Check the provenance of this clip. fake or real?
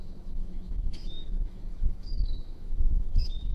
fake